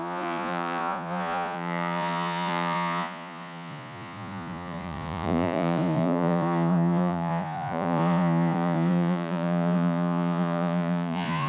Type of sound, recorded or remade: remade